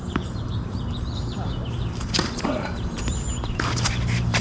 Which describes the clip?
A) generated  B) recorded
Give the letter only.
A